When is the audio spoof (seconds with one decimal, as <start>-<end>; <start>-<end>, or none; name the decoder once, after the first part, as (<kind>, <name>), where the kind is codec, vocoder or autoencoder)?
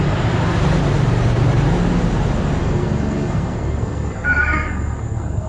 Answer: 2.6-5.5 (codec, SNAC)